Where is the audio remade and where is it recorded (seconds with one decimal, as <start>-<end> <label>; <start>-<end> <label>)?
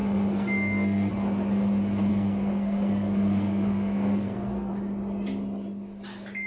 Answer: 0.0-1.1 remade; 1.1-2.1 recorded; 2.1-4.7 remade; 4.7-6.5 recorded